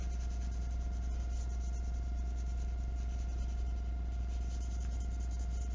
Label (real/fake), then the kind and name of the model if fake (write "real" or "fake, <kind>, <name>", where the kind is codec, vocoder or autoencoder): real